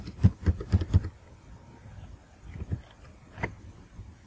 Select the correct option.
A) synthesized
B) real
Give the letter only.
B